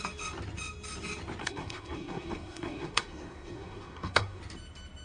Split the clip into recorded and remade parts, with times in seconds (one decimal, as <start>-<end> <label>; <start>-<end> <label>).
0.0-1.4 recorded; 1.4-4.4 remade; 4.4-5.0 recorded